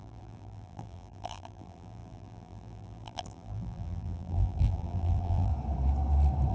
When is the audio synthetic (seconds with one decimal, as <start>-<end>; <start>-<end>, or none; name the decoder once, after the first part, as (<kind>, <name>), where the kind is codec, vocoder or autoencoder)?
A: 0.0-5.5 (vocoder, BigVGAN v2)